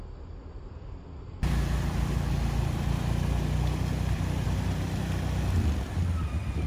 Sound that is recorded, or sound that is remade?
remade